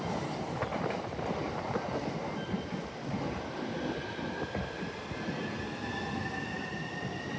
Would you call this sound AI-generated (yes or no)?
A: no